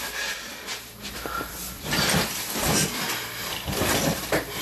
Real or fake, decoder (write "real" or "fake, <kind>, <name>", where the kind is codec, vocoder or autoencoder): fake, vocoder, BigVGAN v2